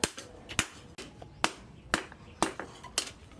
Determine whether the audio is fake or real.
real